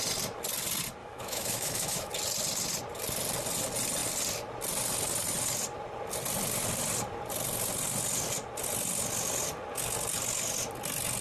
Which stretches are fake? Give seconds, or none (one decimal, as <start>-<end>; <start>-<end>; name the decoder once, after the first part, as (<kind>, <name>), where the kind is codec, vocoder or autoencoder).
1.0-2.1 (autoencoder, DAC-VAE)